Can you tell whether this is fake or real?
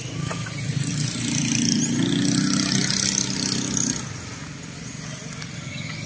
real